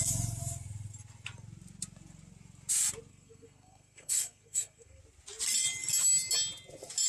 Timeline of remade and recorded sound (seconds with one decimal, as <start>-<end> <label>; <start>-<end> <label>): 0.0-3.1 recorded; 3.1-5.0 remade; 5.0-7.1 recorded